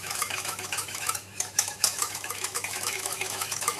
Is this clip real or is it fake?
fake